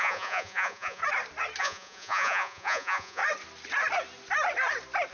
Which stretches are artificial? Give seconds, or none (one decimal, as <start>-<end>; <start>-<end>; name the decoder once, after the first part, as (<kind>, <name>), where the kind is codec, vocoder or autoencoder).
0.0-1.0 (vocoder, Vocos); 1.6-3.2

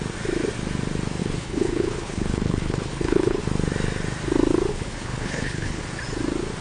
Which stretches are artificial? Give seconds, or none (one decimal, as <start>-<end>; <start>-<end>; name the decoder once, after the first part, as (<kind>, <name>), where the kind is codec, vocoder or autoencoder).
1.2-3.4 (codec, HILCodec); 4.7-5.8

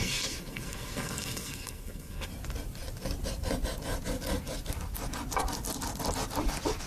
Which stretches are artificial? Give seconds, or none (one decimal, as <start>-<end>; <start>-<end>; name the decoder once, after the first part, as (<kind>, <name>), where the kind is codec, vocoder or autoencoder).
0.0-2.3 (codec, SNAC)